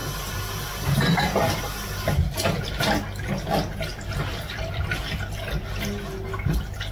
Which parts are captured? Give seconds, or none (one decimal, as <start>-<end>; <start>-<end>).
0.0-3.9; 4.7-6.9

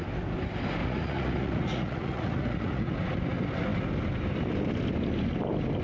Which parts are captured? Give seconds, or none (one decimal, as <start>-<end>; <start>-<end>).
0.0-0.8; 2.9-5.8

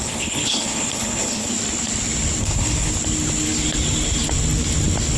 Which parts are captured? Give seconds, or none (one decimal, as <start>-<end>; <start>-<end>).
1.5-2.4; 2.9-5.2

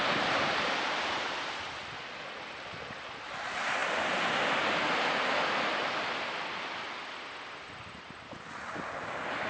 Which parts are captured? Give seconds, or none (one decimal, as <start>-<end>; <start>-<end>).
0.0-9.5

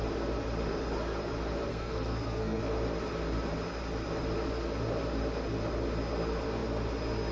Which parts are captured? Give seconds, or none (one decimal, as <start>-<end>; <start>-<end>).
0.0-1.7; 2.6-7.3

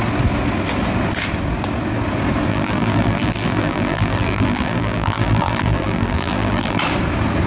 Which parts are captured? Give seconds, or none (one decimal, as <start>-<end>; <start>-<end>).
0.0-2.5; 6.8-7.5